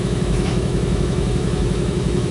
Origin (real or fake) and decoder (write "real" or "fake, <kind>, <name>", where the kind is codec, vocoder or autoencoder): fake, autoencoder, DAC-VAE